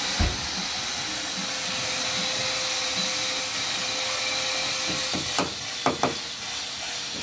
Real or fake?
real